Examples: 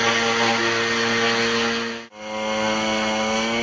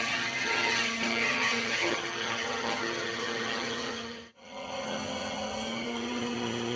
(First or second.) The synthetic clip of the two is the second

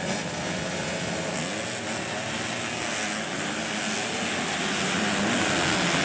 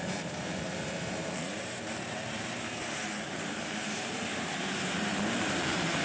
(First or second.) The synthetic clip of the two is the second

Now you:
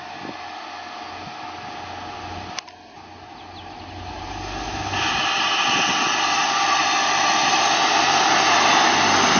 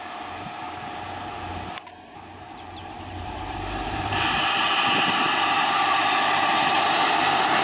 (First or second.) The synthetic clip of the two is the second